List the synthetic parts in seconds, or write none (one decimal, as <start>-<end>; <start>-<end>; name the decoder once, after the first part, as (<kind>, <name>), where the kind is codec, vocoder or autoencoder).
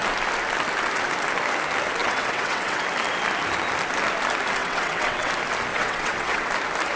2.0-2.8 (vocoder, WaveNeXt); 4.6-5.3; 5.7-6.5